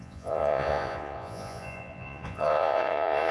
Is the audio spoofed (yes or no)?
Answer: yes